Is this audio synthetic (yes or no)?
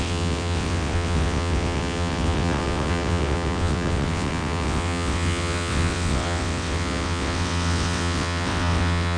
yes